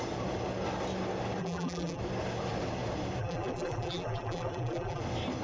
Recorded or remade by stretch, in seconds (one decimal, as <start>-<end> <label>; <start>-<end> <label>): 0.0-1.4 recorded; 1.4-2.0 remade; 2.0-3.2 recorded; 3.2-5.0 remade; 5.0-5.4 recorded

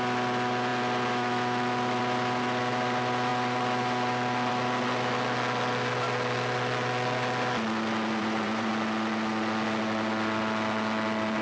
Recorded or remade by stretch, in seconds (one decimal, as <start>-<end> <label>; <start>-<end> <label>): 0.0-8.2 recorded; 8.2-8.7 remade; 8.7-11.4 recorded

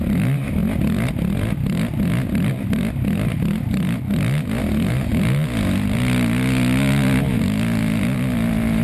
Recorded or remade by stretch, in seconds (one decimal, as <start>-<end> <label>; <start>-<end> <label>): 0.0-8.8 recorded

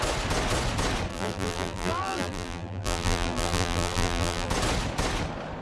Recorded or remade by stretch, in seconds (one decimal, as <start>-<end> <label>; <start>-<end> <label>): 0.0-1.1 recorded; 1.1-4.5 remade; 4.5-5.6 recorded

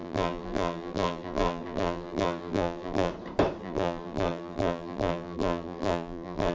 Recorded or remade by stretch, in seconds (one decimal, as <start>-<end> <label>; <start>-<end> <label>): 0.0-3.1 remade; 3.1-3.6 recorded; 3.6-6.5 remade

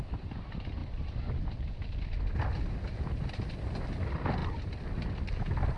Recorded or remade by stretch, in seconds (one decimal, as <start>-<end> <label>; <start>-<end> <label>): 0.0-0.8 remade; 0.8-3.3 recorded; 3.3-4.4 remade; 4.4-5.8 recorded

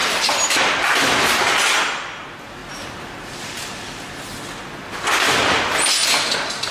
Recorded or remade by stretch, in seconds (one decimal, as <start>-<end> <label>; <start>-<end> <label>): 0.0-1.4 remade; 1.4-2.6 recorded; 2.6-4.2 remade; 4.2-6.7 recorded

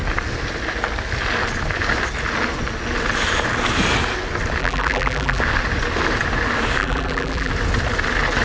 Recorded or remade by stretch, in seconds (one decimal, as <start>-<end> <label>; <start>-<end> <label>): 0.0-4.6 recorded; 4.6-5.4 remade; 5.4-6.8 recorded; 6.8-7.5 remade; 7.5-8.4 recorded